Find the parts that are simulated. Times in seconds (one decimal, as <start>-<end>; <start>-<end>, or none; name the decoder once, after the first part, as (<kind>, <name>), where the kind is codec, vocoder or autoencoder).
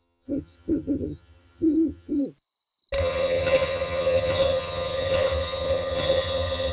0.0-2.2 (vocoder, HiFi-GAN); 3.0-6.7